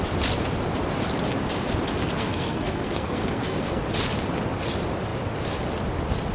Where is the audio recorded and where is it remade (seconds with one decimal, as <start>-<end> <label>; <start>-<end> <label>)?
0.0-2.0 recorded; 2.0-3.8 remade; 3.8-6.3 recorded